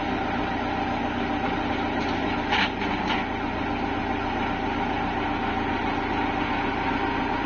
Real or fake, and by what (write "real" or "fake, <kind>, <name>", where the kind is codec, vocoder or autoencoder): real